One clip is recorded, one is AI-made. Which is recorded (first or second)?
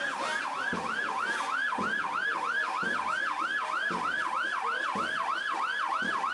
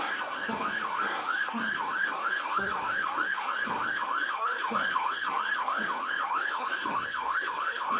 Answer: first